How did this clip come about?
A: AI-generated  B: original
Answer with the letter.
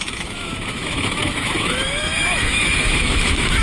A